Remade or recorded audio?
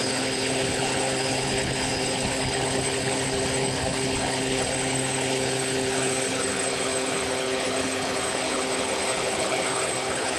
remade